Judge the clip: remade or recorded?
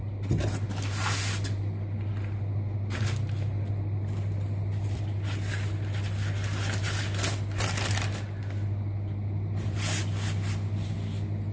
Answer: remade